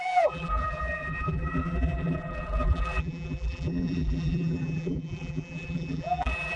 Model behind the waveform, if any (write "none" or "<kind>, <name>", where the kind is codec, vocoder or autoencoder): vocoder, BigVGAN v2